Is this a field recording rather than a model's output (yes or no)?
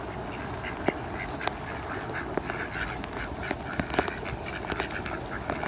yes